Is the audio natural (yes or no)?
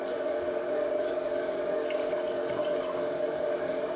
no